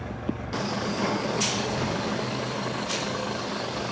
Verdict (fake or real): fake